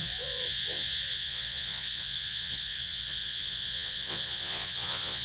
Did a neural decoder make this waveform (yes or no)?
yes